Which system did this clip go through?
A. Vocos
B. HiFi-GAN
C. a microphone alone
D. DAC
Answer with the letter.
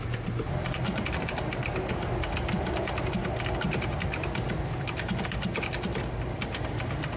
C